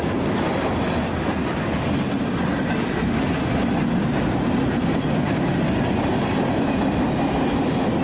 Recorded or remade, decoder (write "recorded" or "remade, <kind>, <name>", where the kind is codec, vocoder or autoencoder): recorded